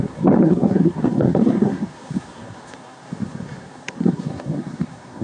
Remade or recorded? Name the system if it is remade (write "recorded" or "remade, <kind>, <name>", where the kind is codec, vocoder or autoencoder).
remade, codec, SNAC